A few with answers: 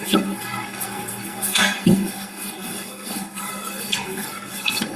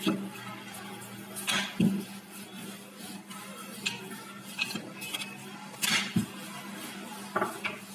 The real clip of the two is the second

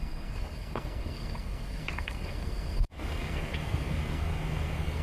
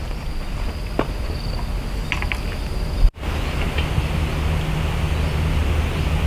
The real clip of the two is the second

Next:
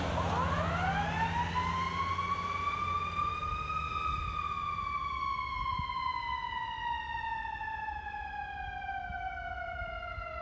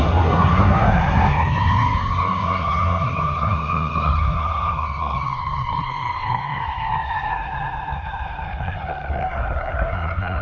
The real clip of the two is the first